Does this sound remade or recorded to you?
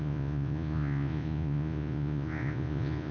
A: remade